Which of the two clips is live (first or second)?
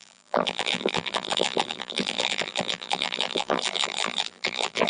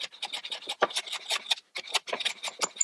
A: second